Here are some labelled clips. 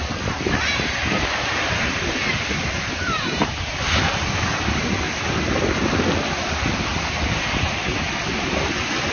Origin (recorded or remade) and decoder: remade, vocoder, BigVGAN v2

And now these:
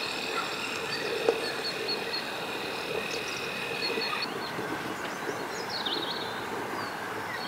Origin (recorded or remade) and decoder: recorded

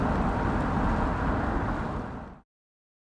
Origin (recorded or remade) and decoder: remade, vocoder, BigVGAN v2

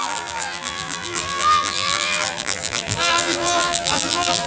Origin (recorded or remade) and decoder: remade, vocoder, BigVGAN v2